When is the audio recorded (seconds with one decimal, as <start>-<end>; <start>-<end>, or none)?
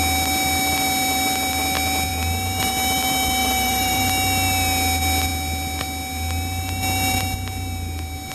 0.0-3.4; 4.1-8.3